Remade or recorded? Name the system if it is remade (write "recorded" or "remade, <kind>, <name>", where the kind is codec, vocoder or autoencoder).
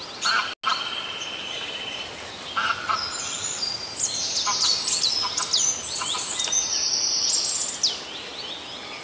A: recorded